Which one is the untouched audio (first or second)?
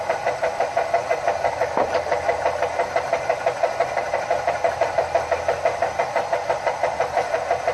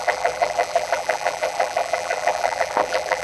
first